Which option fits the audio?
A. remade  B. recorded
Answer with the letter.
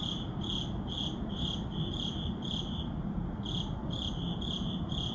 B